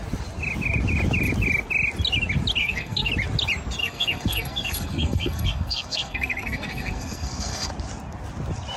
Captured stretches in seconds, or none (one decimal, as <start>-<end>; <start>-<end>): 0.0-2.6; 3.1-3.8; 7.7-8.8